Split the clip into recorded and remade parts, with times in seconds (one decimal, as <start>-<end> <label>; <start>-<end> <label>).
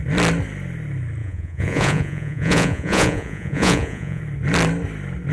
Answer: 0.0-1.2 recorded; 1.2-4.2 remade; 4.2-5.3 recorded